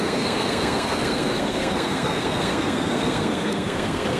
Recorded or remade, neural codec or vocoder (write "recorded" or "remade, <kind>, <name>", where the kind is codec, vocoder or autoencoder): remade, codec, SNAC